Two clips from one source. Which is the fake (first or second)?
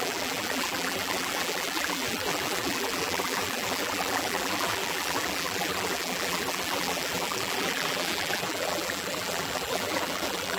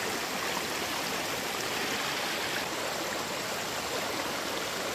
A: first